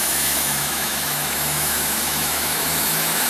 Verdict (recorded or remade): remade